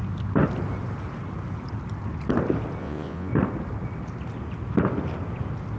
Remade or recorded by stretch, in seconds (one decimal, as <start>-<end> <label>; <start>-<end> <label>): 0.0-2.8 recorded; 2.8-3.3 remade; 3.3-5.8 recorded

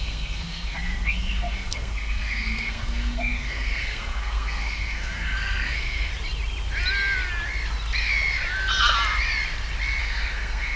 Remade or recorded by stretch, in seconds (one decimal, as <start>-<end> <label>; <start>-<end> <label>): 0.0-6.1 remade; 6.1-10.0 recorded; 10.0-10.8 remade